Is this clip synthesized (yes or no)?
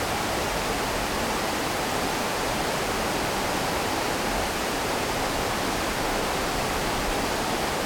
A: yes